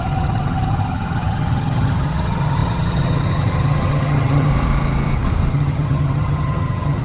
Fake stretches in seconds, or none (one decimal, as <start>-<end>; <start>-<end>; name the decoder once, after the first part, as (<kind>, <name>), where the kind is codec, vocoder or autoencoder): 0.0-4.5 (vocoder, HiFi-GAN); 5.5-7.0